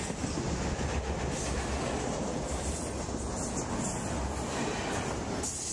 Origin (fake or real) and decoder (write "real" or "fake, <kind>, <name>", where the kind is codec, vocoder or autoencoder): real